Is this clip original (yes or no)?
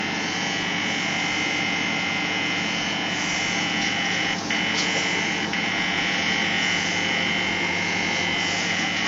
no